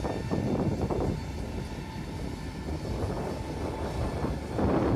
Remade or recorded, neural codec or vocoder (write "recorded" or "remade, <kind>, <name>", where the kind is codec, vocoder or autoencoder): recorded